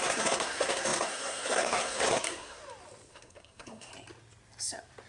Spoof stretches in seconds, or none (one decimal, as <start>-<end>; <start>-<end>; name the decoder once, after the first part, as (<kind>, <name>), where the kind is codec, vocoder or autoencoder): 0.0-2.6 (codec, SNAC); 3.1-3.9